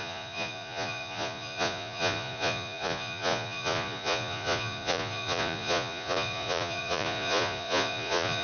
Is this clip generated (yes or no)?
yes